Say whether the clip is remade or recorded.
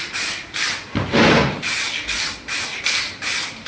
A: recorded